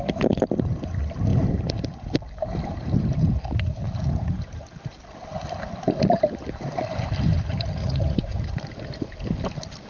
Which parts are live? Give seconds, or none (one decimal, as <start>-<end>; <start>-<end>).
0.0-7.8; 8.4-9.9